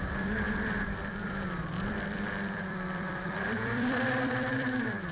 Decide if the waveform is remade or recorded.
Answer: remade